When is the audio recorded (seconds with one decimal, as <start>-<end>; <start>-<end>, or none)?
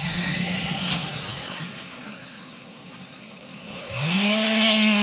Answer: none